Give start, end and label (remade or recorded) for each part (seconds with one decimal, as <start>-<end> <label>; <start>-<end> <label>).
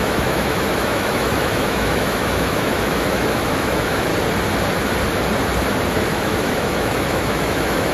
0.0-4.1 remade; 4.1-5.9 recorded; 5.9-7.9 remade